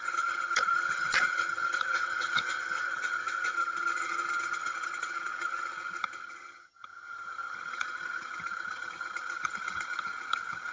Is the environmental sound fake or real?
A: fake